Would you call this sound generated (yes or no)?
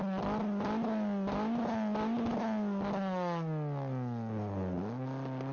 no